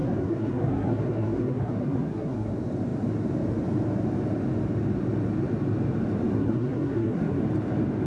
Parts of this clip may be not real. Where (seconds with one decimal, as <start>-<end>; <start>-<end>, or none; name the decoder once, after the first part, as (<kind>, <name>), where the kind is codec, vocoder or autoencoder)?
0.0-2.5 (codec, SNAC); 6.3-7.4